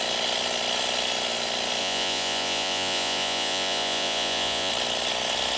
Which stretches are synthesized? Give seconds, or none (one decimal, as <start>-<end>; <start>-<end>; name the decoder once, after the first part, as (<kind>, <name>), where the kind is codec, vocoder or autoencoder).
1.8-4.7 (vocoder, Vocos)